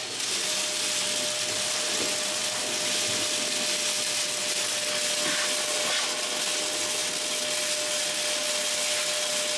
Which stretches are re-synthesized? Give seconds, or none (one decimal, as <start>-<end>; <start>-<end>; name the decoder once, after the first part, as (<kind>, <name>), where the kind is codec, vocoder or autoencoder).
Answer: none